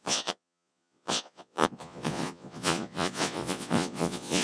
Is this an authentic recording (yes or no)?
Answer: no